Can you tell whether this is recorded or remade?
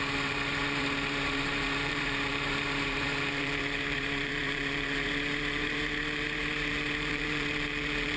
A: remade